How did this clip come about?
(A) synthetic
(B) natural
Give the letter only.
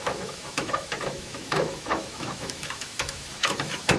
A